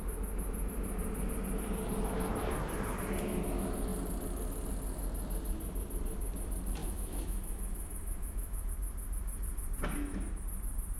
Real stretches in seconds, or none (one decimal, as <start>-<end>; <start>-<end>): 0.0-6.8; 8.7-11.0